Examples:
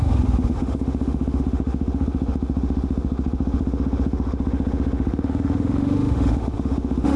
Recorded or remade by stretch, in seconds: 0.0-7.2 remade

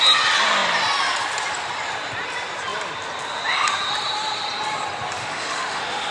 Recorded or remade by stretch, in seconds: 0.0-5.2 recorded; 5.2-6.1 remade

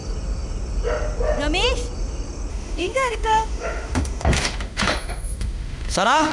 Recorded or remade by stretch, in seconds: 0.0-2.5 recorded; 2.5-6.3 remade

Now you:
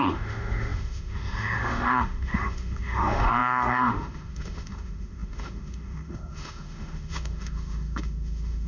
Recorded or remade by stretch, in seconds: 0.0-8.7 remade

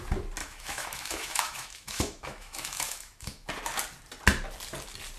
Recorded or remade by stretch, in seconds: 0.0-0.4 recorded; 0.4-3.5 remade; 3.5-5.2 recorded